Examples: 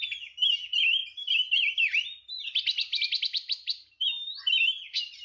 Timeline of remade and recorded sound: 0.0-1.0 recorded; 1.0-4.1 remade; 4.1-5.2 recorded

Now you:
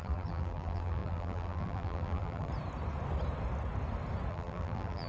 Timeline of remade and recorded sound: 0.0-2.5 remade; 2.5-4.3 recorded; 4.3-5.1 remade

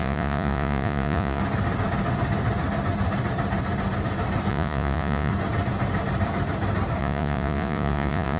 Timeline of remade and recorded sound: 0.0-1.4 remade; 1.4-4.5 recorded; 4.5-5.3 remade; 5.3-7.0 recorded; 7.0-8.4 remade